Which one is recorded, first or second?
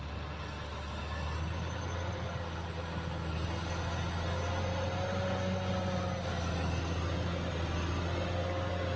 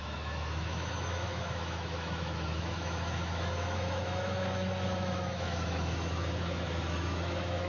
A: first